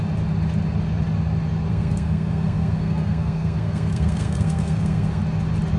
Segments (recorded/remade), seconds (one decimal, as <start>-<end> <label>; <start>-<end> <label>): 0.0-1.7 recorded; 1.7-5.2 remade; 5.2-5.8 recorded